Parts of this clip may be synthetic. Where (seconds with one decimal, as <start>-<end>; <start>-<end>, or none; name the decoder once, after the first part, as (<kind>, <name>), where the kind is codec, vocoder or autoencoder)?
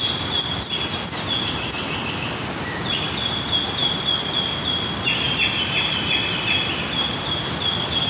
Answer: none